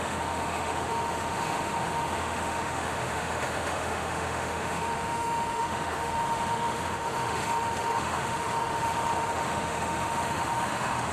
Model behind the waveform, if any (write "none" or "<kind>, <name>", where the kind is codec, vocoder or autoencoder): autoencoder, DAC-VAE